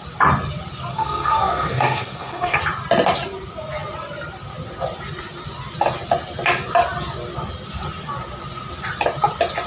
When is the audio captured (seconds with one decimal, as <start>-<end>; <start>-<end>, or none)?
0.0-0.9; 2.6-9.7